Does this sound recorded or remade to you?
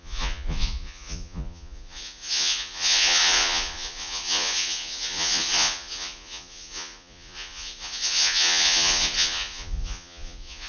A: remade